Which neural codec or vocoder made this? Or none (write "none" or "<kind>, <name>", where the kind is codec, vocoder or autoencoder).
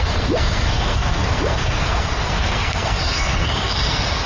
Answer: codec, SNAC